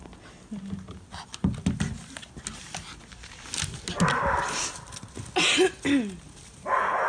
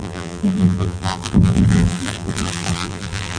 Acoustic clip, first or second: first